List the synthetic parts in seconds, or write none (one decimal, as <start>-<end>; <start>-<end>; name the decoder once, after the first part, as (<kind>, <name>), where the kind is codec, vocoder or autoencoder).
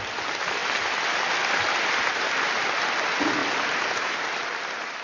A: 3.4-4.4 (vocoder, BigVGAN v2)